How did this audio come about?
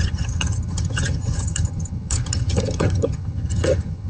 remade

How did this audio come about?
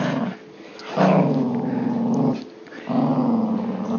recorded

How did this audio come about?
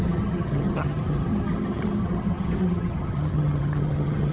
remade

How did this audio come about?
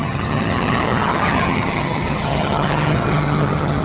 remade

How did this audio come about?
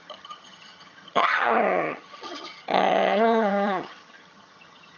remade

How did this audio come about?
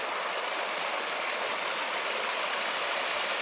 recorded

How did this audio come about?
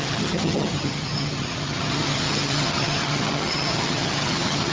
remade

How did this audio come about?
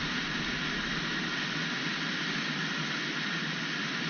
recorded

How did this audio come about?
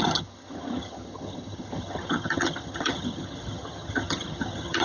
remade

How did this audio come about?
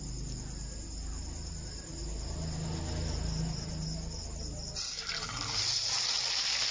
recorded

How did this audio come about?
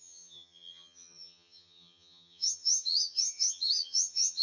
remade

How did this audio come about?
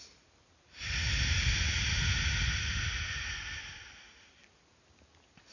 recorded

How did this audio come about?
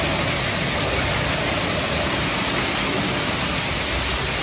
recorded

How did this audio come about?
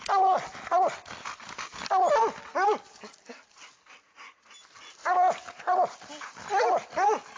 recorded